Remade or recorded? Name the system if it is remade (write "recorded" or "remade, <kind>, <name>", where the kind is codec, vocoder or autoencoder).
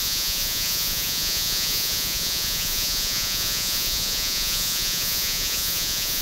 remade, vocoder, Vocos